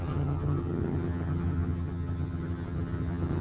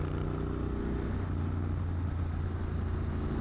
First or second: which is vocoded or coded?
first